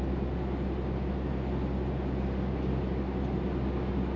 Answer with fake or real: real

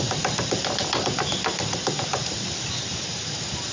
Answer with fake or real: real